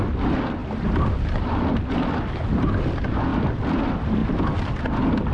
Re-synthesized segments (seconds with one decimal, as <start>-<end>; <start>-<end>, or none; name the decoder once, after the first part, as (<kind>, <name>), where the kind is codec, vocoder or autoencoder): 0.6-1.6 (vocoder, BigVGAN v2); 3.3-3.8; 4.2-4.8